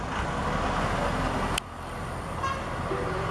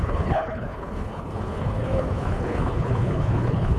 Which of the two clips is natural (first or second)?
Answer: first